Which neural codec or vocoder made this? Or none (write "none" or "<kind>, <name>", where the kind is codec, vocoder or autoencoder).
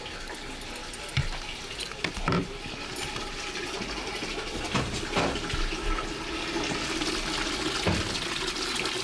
none